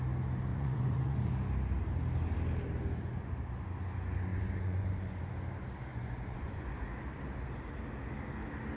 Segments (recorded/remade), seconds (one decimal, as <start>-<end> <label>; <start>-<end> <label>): 0.0-0.5 recorded; 0.5-1.3 remade; 1.3-4.3 recorded; 4.3-5.3 remade; 5.3-5.9 recorded; 5.9-6.7 remade; 6.7-8.8 recorded